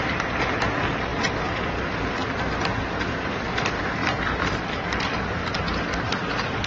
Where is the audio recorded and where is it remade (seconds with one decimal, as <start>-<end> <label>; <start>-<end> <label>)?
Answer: 0.0-5.4 remade; 5.4-6.0 recorded; 6.0-6.7 remade